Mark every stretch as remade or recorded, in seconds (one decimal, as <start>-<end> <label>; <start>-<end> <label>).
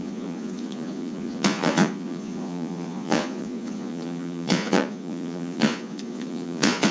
0.0-6.9 remade